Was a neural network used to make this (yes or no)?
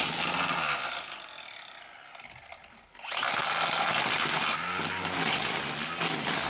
no